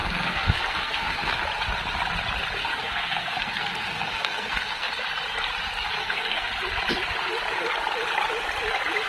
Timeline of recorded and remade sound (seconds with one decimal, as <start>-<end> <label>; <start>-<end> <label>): 0.0-1.4 remade; 1.4-2.6 recorded; 2.6-4.9 remade; 4.9-6.0 recorded; 6.0-6.5 remade; 6.5-9.1 recorded